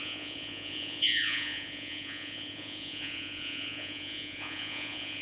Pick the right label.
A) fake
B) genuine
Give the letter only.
A